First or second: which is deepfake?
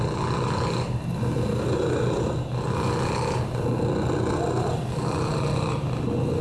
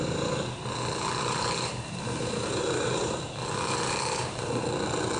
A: second